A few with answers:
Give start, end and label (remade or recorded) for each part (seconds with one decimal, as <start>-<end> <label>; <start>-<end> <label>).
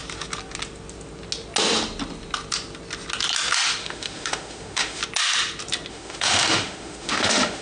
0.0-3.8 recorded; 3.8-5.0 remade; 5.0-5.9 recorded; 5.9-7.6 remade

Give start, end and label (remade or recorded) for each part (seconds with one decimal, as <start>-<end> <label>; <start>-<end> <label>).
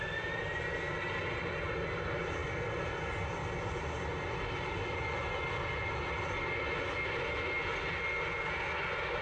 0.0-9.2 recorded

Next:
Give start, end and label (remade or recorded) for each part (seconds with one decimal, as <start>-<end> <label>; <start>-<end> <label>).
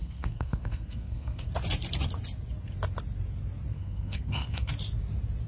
0.0-1.5 remade; 1.5-3.7 recorded; 3.7-4.7 remade; 4.7-5.5 recorded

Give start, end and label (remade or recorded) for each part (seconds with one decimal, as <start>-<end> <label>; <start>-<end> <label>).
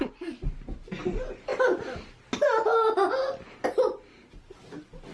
0.0-5.1 recorded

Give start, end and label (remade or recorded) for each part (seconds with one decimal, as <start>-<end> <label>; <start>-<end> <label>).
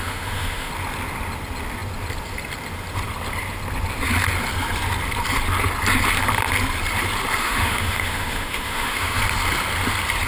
0.0-0.7 remade; 0.7-7.4 recorded; 7.4-9.2 remade; 9.2-10.3 recorded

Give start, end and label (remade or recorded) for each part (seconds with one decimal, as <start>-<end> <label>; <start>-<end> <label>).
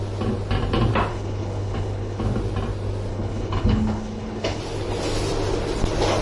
0.0-1.1 recorded; 1.1-2.2 remade; 2.2-3.1 recorded; 3.1-4.6 remade; 4.6-6.2 recorded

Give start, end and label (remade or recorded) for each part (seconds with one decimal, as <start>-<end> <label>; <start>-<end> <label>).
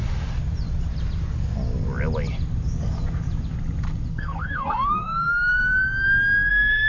0.0-4.1 recorded; 4.1-5.6 remade; 5.6-6.5 recorded; 6.5-6.9 remade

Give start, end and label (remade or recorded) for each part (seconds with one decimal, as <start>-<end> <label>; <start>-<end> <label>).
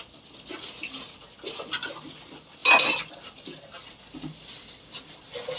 0.0-5.6 recorded